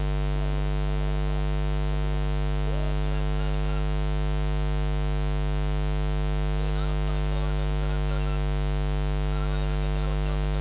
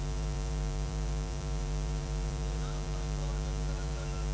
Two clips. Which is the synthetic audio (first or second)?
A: second